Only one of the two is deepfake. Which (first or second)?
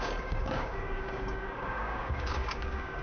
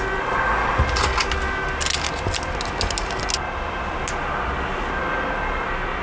first